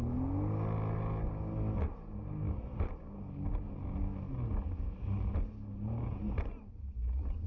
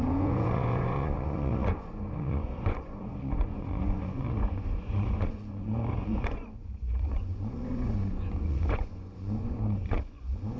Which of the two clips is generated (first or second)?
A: second